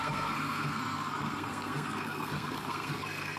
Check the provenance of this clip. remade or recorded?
remade